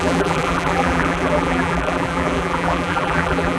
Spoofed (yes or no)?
yes